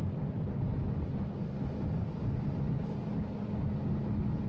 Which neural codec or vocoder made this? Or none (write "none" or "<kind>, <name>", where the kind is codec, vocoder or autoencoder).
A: none